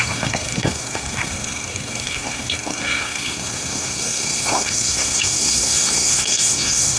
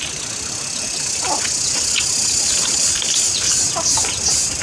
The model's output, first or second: first